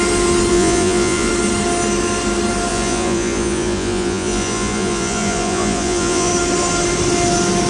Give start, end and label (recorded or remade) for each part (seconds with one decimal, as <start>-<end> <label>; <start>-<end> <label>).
0.0-0.5 recorded; 0.5-1.3 remade; 1.3-2.7 recorded; 2.7-6.3 remade; 6.3-7.7 recorded